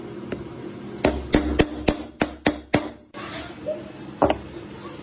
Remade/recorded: recorded